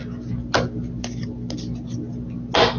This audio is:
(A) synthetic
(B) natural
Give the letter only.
B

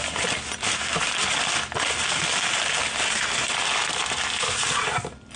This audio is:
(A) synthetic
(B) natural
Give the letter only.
B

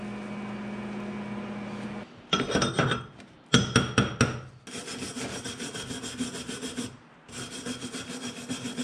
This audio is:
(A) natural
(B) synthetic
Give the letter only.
A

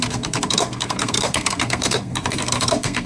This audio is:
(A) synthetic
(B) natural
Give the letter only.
A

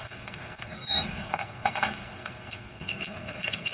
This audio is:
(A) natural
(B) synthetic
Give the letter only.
B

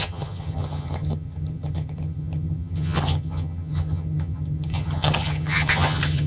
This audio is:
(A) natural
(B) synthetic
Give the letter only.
B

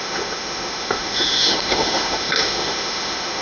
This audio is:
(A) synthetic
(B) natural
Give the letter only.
A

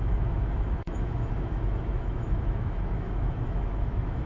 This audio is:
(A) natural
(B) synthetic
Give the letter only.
B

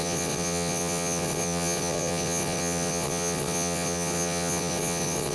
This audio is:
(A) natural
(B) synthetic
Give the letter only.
B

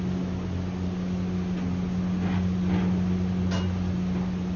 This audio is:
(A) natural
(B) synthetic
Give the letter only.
A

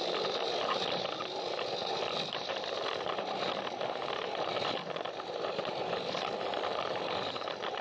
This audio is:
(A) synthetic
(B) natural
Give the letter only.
B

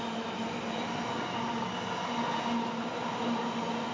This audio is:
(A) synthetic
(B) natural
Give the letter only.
B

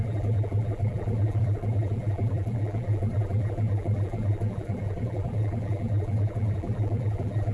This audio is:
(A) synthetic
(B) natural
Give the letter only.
A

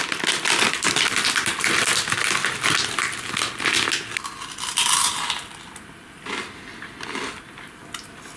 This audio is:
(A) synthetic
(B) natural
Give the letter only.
B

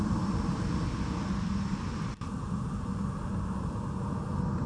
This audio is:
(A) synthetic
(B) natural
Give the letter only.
B